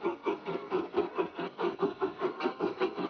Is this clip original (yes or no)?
no